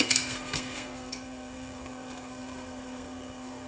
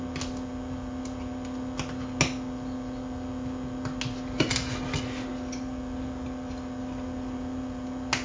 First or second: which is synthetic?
first